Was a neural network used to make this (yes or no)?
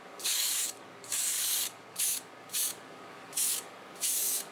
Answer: yes